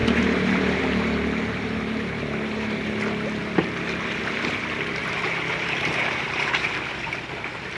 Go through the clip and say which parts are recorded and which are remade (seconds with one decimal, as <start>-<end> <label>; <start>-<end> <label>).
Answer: 0.0-0.8 remade; 0.8-5.0 recorded; 5.0-7.1 remade; 7.1-7.8 recorded